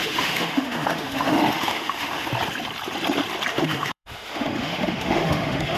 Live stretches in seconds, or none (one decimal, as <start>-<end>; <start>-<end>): 2.3-3.5